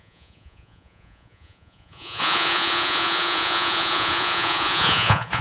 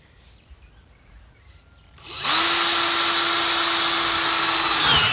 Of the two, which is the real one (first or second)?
second